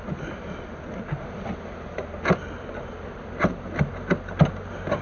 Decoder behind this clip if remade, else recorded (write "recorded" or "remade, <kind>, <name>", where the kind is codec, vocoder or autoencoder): recorded